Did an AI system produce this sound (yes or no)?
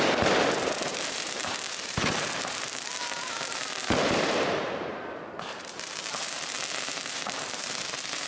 yes